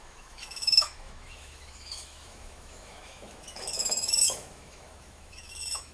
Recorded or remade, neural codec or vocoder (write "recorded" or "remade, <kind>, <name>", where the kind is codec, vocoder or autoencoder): remade, autoencoder, DAC-VAE